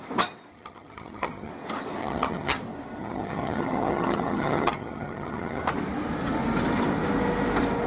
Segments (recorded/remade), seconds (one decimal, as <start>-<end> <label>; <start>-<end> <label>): 0.0-0.5 recorded; 0.5-1.5 remade; 1.5-2.0 recorded; 2.0-2.6 remade; 2.6-3.0 recorded; 3.0-5.6 remade; 5.6-7.9 recorded